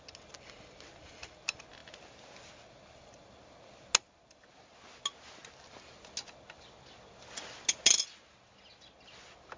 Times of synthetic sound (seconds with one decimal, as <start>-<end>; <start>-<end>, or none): none